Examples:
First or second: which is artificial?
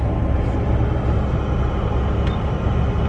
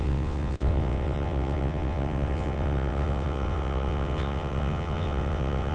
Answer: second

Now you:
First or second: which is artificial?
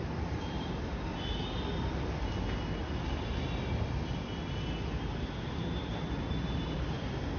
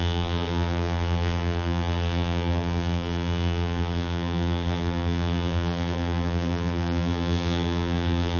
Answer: second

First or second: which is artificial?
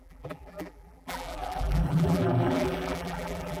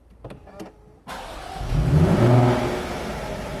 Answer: first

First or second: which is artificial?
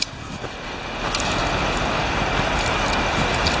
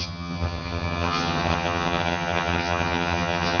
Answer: second